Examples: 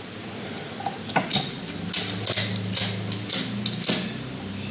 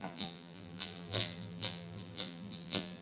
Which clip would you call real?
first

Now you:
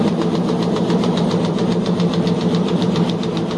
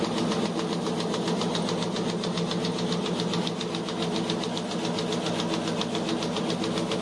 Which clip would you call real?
second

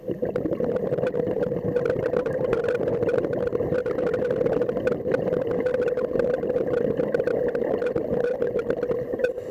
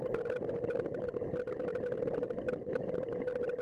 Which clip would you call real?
second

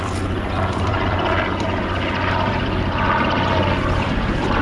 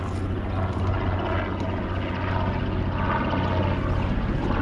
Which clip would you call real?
second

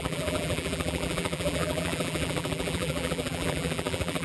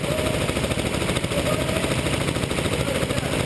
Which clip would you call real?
second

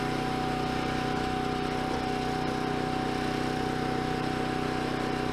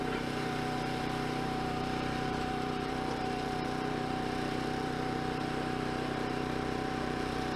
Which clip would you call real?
first